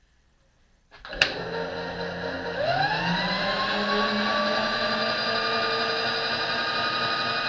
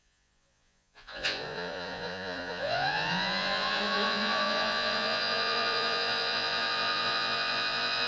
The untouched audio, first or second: first